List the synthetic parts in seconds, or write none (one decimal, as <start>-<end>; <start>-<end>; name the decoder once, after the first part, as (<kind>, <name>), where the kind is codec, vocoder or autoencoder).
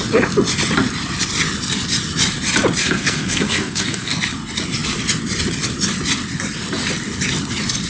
2.8-4.2 (codec, SNAC)